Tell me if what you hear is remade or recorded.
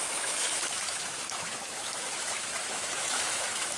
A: remade